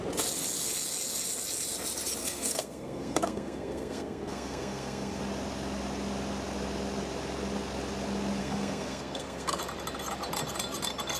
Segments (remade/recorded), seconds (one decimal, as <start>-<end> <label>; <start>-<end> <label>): 0.0-2.2 recorded; 2.2-5.2 remade; 5.2-8.4 recorded; 8.4-9.6 remade; 9.6-11.2 recorded